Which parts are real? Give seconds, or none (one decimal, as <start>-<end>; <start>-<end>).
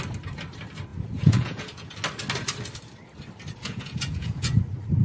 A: 0.0-0.9; 1.9-3.6; 4.6-5.0